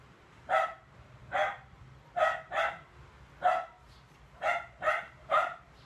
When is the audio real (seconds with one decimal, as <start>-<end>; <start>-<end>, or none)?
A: 1.4-4.5